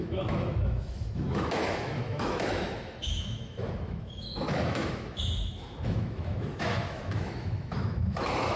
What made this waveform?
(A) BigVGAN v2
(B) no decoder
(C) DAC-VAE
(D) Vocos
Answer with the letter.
C